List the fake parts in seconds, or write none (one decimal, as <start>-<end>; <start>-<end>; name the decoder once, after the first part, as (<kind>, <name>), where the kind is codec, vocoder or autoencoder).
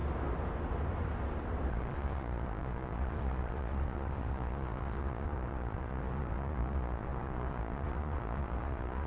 1.7-9.1 (vocoder, Vocos)